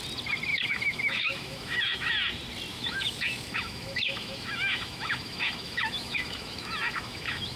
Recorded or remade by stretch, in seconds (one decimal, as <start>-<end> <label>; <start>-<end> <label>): 0.0-0.5 recorded; 0.5-2.1 remade; 2.1-2.7 recorded; 2.7-7.6 remade